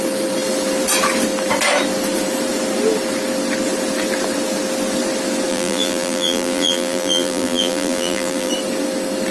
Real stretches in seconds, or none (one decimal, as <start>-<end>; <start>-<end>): 0.0-5.5; 8.5-9.3